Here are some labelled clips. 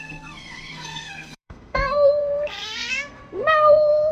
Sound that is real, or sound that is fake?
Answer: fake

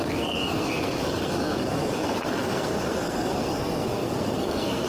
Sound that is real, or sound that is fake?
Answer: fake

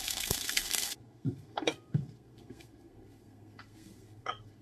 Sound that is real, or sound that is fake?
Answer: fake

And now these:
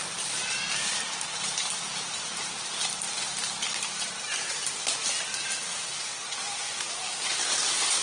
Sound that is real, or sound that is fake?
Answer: real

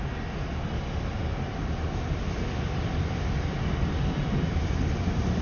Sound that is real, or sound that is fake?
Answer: real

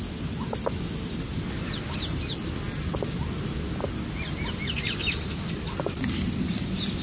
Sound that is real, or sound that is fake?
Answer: real